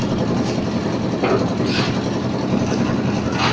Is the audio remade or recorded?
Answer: recorded